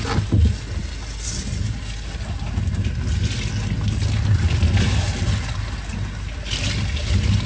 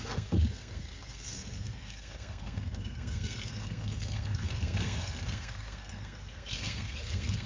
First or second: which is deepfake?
second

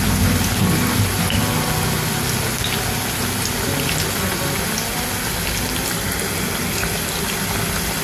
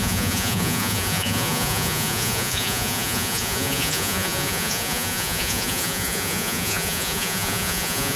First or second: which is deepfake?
second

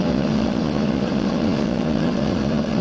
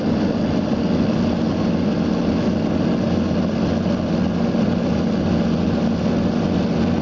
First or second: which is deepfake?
first